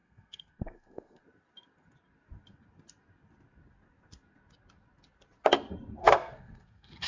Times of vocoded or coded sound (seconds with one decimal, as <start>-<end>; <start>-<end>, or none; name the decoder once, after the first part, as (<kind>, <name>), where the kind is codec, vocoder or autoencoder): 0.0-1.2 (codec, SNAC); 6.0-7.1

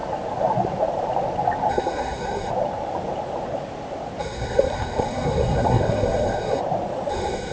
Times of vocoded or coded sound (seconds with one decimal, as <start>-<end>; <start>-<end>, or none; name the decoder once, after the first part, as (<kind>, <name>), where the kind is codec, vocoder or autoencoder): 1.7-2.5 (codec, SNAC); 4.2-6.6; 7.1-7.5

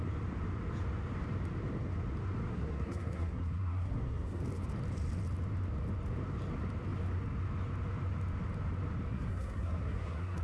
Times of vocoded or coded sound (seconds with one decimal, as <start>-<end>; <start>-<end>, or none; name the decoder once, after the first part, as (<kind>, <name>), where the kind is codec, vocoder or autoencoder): 2.5-4.4 (codec, SNAC); 9.1-10.4

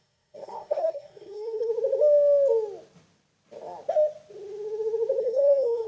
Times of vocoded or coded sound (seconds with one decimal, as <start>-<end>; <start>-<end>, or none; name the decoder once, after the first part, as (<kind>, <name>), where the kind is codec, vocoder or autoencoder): 0.0-1.7 (codec, SNAC); 5.2-5.9

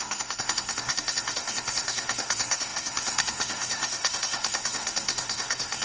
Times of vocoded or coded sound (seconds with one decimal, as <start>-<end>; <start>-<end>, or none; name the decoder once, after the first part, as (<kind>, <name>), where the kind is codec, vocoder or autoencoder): 0.0-5.8 (codec, SNAC)

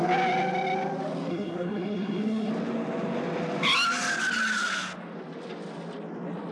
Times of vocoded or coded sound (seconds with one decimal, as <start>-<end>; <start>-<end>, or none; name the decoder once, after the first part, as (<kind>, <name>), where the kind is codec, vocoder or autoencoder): 1.3-2.5 (codec, SNAC)

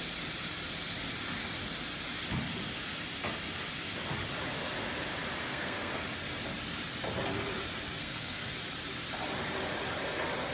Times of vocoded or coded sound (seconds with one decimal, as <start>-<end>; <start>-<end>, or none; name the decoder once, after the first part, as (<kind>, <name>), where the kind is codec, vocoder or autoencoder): 5.4-5.9 (codec, SNAC); 8.0-8.5